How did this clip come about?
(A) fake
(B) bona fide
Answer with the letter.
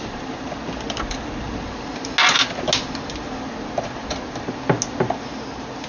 B